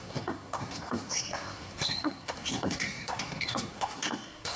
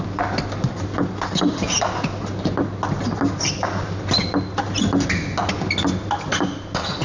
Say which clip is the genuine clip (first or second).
second